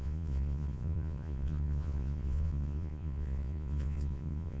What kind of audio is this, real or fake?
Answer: fake